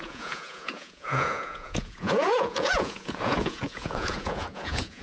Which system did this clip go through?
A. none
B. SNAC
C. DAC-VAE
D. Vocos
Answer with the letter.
D